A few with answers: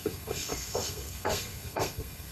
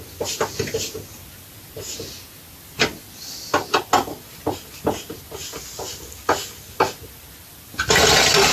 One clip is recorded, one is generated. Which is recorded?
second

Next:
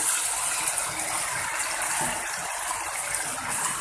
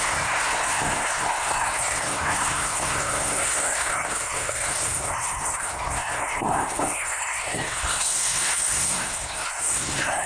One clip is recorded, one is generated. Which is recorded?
first